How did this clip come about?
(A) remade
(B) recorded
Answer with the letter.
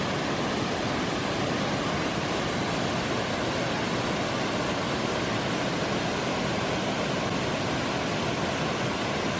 B